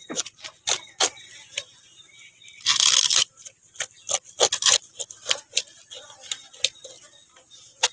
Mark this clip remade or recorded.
recorded